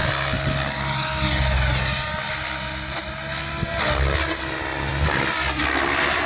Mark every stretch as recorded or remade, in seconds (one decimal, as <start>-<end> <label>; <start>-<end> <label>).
0.0-6.3 recorded